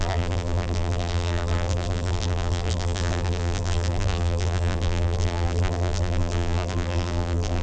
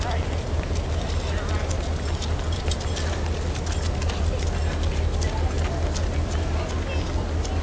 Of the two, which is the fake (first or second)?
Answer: first